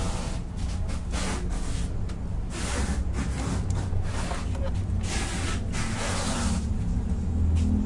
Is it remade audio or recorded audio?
recorded